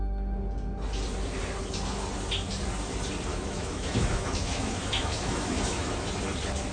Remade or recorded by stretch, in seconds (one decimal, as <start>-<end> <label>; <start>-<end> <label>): 0.0-3.3 recorded; 3.3-6.1 remade; 6.1-6.7 recorded